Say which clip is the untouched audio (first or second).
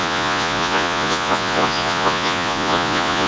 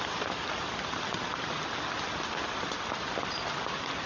second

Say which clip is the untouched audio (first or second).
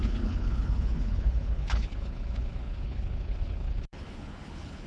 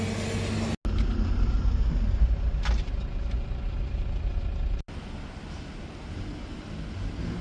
second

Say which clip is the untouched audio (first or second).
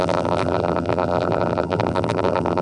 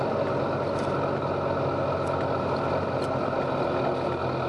second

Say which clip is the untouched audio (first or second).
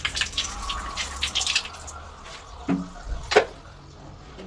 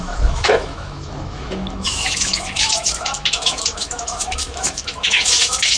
first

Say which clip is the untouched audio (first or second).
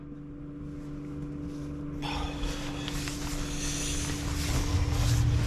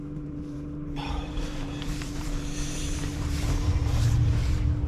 first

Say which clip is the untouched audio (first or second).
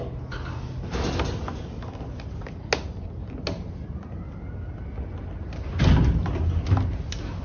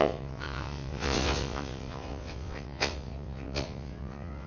first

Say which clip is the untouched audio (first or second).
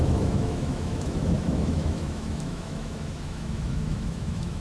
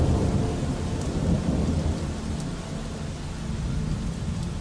second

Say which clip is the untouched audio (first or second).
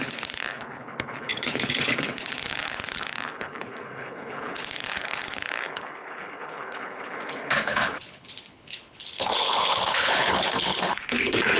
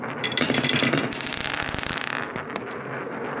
second